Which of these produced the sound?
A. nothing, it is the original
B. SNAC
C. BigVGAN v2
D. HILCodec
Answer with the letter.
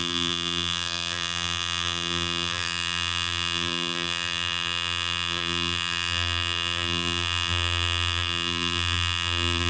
C